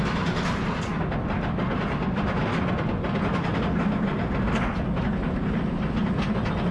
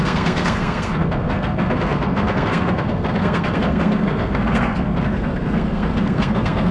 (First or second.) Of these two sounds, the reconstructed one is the second